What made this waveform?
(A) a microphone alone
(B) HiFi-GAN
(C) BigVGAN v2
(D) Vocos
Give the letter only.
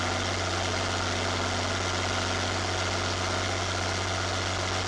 A